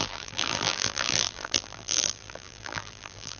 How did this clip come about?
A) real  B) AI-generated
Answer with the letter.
B